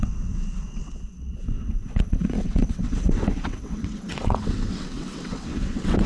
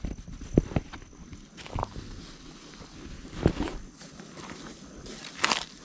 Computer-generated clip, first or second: first